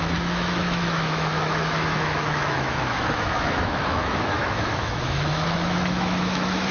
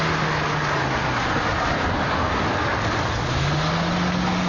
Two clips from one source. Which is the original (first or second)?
second